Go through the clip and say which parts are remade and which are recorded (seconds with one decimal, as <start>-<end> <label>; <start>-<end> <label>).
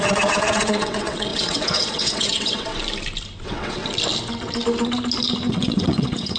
0.0-2.7 remade; 2.7-3.4 recorded; 3.4-3.8 remade; 3.8-5.5 recorded; 5.5-6.4 remade